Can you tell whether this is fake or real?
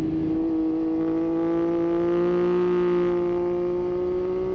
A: real